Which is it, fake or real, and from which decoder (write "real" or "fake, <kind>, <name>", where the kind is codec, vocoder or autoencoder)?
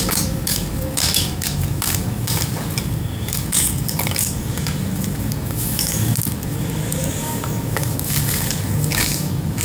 fake, codec, DAC